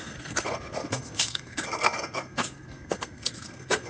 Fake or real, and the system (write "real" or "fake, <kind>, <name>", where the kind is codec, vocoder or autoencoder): fake, codec, SNAC